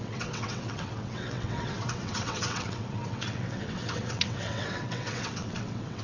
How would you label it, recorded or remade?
remade